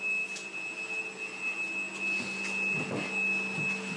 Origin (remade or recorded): recorded